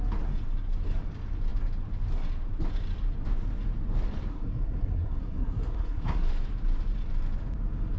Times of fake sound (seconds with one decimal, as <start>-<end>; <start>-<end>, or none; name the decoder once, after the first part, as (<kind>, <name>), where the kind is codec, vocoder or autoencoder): 4.3-6.3 (codec, SNAC)